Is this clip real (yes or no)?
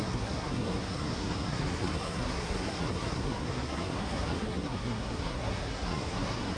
no